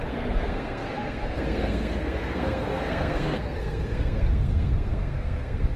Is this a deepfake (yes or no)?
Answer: yes